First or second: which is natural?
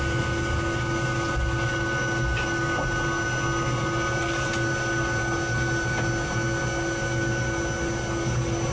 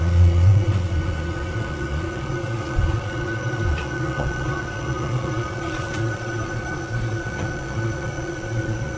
first